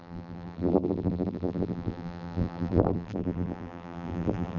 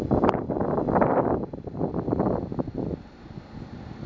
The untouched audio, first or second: second